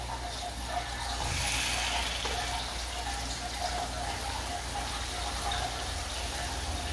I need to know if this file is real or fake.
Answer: real